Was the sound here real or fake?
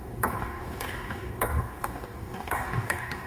fake